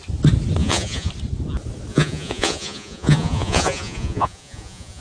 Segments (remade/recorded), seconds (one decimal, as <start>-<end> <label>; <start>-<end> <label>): 0.0-0.6 recorded; 0.6-1.1 remade; 1.1-1.9 recorded; 1.9-5.0 remade